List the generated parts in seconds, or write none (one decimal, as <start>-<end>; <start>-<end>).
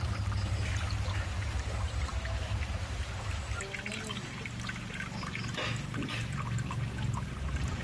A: none